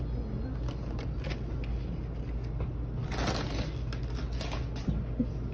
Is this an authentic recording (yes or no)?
yes